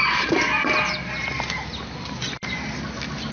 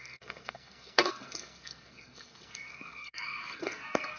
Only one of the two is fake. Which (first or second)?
second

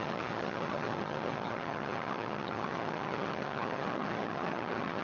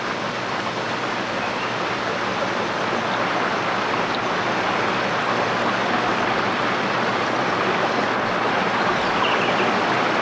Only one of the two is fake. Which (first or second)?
first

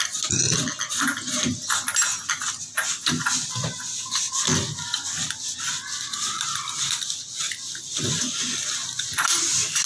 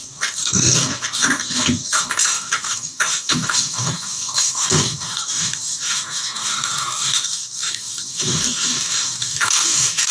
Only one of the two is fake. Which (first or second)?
second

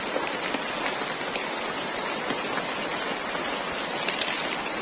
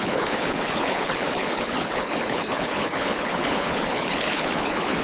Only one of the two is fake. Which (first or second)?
second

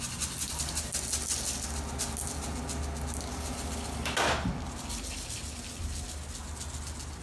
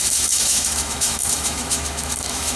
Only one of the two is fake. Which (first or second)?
second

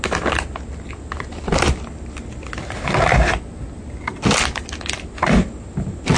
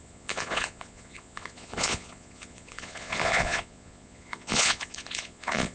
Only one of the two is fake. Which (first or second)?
second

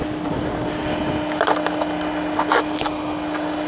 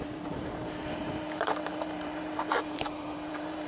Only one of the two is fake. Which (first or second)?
second